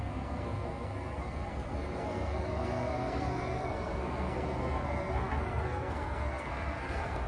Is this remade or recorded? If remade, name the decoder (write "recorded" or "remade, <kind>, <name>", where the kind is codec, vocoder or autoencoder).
remade, codec, SNAC